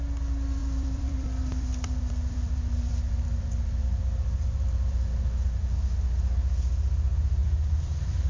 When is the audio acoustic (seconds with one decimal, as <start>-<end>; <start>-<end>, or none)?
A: 0.0-0.6; 5.6-8.3

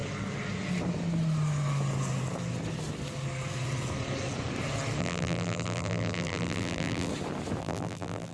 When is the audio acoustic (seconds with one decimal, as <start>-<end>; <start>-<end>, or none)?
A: 0.0-5.0; 7.1-7.6